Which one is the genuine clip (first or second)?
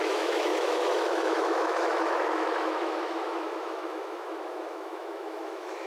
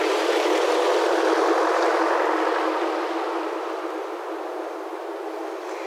second